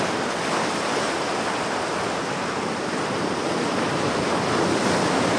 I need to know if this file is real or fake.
real